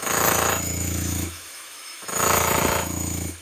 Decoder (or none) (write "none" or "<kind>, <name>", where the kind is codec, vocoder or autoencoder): autoencoder, DAC-VAE